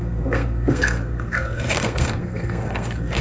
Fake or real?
fake